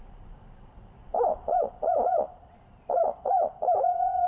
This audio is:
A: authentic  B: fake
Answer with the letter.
B